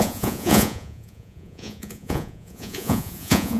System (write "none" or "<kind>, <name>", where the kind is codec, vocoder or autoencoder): vocoder, Vocos